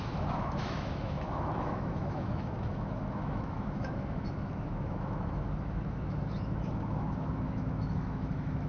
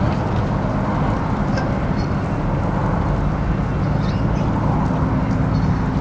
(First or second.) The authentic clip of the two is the second